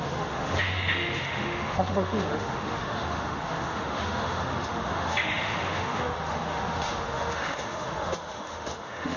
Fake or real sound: fake